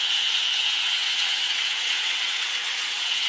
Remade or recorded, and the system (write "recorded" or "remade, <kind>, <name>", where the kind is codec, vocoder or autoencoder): remade, vocoder, WaveNeXt